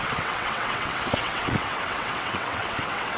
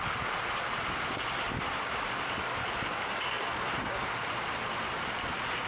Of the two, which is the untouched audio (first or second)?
second